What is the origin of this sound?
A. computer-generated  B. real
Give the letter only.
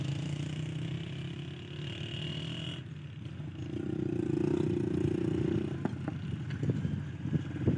B